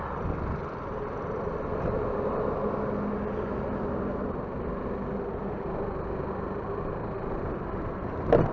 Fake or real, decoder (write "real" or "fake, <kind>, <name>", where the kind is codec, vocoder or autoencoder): real